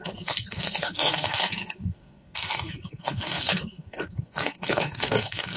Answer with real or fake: fake